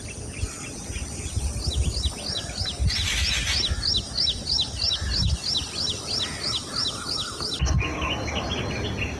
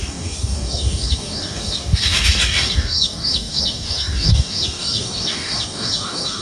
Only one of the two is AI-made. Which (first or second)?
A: second